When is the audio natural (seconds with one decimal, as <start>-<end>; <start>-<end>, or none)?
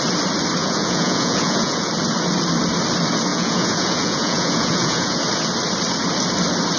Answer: 0.0-0.6; 1.9-3.3; 5.2-6.8